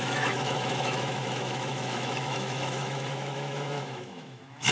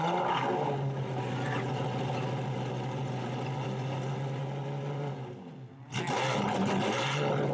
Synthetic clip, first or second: first